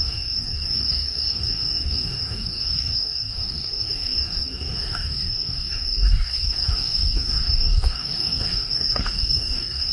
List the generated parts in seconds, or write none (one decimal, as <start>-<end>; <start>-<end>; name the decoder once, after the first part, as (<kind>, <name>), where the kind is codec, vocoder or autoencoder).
0.0-9.9 (codec, DAC)